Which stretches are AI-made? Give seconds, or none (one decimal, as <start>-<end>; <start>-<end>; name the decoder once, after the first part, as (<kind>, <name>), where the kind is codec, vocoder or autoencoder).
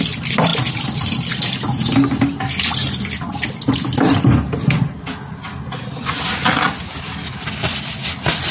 none